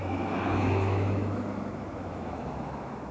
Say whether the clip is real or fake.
fake